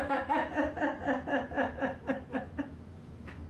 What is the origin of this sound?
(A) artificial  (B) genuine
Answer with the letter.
A